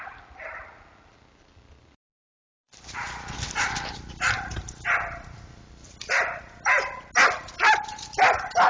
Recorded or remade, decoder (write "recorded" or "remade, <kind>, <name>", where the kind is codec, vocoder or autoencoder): recorded